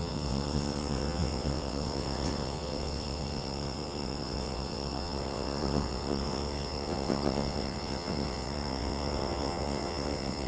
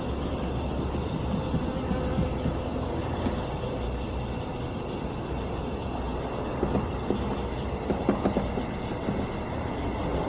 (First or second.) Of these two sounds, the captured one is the second